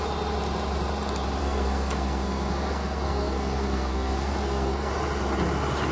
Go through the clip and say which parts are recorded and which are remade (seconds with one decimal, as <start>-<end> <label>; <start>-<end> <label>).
0.0-1.4 recorded; 1.4-4.9 remade; 4.9-5.9 recorded